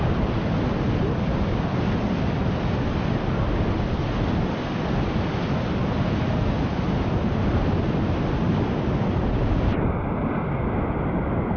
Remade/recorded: recorded